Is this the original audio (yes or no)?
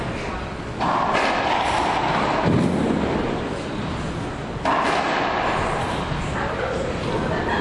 yes